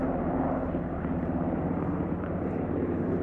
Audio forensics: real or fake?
fake